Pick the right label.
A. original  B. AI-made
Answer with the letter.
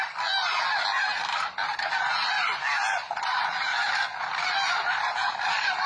A